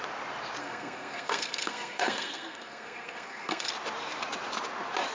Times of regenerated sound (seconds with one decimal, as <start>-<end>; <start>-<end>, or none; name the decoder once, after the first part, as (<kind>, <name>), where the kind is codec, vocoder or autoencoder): 0.6-3.7 (codec, SNAC)